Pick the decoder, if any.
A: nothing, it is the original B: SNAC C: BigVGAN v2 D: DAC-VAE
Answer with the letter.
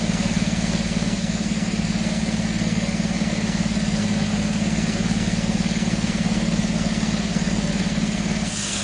B